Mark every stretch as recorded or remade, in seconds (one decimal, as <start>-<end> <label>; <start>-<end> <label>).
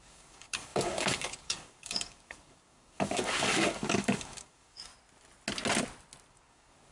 0.0-4.9 remade; 4.9-6.3 recorded; 6.3-6.9 remade